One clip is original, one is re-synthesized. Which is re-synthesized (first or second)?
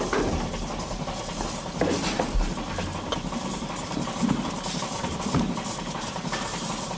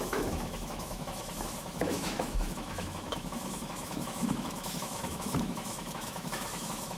second